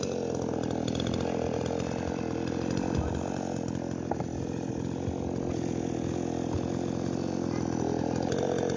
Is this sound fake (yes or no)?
no